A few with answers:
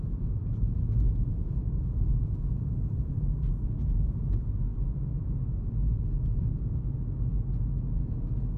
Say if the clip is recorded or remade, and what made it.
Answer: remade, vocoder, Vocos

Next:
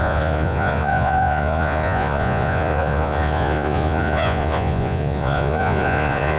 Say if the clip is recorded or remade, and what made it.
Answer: remade, vocoder, Vocos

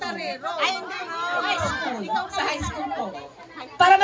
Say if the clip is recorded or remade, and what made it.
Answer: recorded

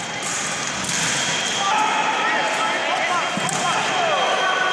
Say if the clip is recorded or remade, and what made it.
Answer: recorded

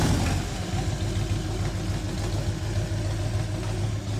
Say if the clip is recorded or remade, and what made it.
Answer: recorded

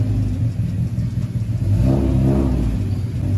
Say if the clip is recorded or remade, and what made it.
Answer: recorded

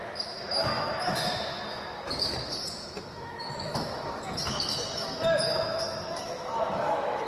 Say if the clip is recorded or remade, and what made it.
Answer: remade, autoencoder, DAC-VAE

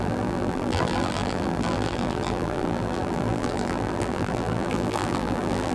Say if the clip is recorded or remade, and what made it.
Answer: remade, vocoder, BigVGAN v2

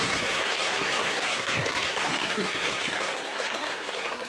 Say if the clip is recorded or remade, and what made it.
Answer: remade, codec, SNAC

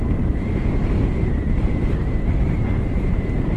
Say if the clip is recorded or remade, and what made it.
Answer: recorded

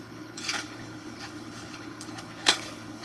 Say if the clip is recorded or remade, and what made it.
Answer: remade, codec, HILCodec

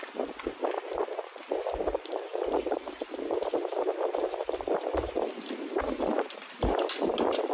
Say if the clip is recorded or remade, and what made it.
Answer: remade, vocoder, BigVGAN v2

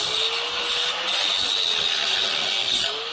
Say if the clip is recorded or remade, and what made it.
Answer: recorded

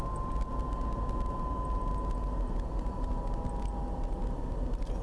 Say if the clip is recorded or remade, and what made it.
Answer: recorded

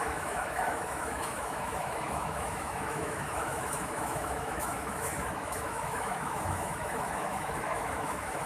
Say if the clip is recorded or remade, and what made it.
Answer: remade, autoencoder, DAC-VAE